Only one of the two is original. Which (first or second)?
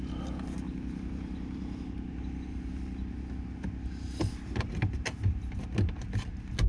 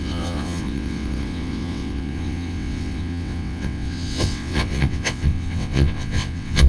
first